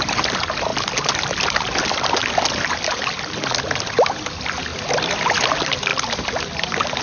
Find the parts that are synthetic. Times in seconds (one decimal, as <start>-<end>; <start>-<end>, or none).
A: none